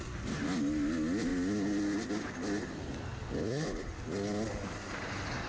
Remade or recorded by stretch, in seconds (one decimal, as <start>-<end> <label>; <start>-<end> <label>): 0.0-5.5 recorded